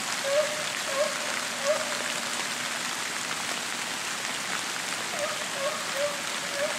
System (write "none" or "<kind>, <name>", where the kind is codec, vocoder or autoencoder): none